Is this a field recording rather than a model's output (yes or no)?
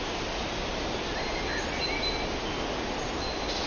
yes